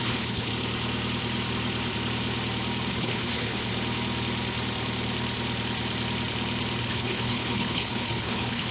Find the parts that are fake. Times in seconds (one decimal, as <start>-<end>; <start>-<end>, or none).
0.0-0.5; 2.9-3.7; 6.8-8.7